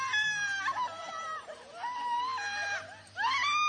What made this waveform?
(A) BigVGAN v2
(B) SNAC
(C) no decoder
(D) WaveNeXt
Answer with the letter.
C